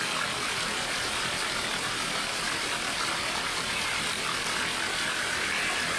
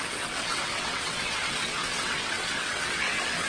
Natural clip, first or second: first